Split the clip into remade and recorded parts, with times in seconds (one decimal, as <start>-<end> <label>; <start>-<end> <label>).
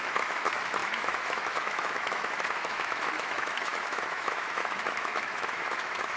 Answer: 0.0-6.2 remade